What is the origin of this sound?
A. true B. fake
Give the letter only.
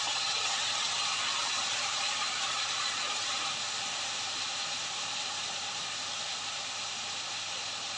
B